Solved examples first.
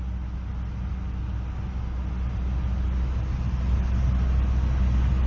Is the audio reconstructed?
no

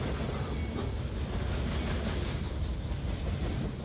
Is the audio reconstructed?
no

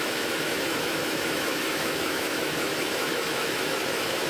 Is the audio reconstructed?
yes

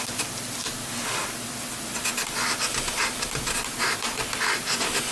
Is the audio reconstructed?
no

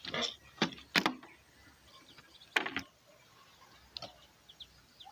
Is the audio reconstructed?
no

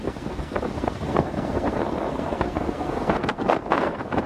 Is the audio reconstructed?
yes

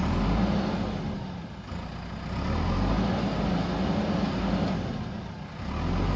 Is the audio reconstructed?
no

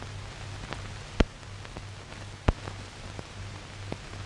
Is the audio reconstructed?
no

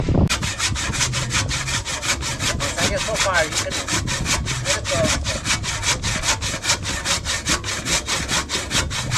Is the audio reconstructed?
no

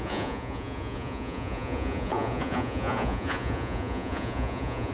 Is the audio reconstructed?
yes